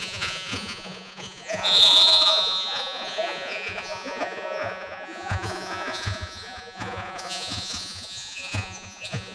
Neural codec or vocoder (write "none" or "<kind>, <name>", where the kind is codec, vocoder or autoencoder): vocoder, Vocos